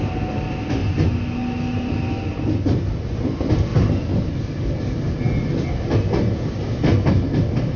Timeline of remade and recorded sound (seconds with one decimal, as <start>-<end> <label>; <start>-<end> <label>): 0.0-0.8 remade; 0.8-2.6 recorded; 2.6-3.7 remade; 3.7-7.1 recorded; 7.1-7.8 remade